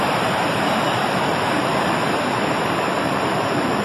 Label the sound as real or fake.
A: fake